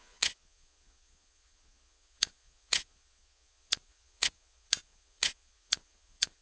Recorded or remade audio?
remade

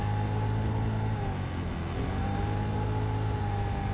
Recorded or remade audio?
recorded